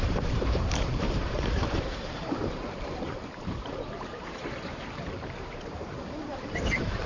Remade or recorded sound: remade